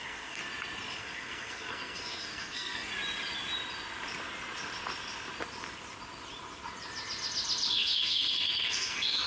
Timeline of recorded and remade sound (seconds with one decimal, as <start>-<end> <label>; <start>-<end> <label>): 0.0-0.4 remade; 0.4-1.0 recorded; 1.0-2.9 remade; 2.9-7.7 recorded; 7.7-9.3 remade